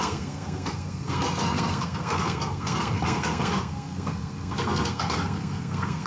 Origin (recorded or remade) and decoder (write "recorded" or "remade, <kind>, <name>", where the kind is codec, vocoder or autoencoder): remade, codec, SNAC